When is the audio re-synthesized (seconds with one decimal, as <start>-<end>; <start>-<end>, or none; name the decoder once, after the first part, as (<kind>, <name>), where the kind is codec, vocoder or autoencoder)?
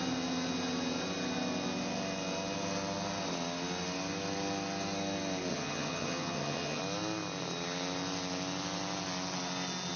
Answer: 5.5-6.8 (vocoder, HiFi-GAN)